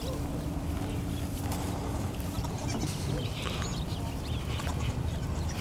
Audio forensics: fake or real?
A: fake